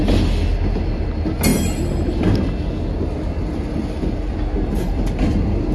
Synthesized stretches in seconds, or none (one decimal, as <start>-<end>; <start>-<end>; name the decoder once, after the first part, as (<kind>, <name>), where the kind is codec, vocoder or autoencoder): none